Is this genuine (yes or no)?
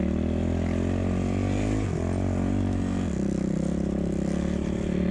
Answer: yes